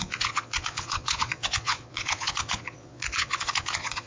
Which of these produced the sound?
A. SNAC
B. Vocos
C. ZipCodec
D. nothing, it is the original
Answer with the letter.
B